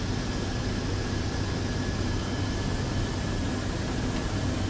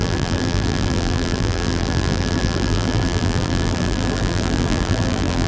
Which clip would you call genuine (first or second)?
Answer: first